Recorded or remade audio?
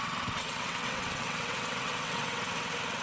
remade